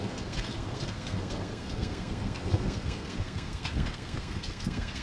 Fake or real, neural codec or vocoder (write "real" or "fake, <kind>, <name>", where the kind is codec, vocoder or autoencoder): fake, codec, SNAC